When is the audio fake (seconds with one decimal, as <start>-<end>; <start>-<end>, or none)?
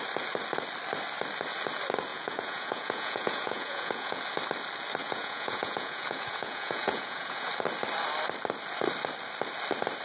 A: 2.1-4.2; 5.0-7.5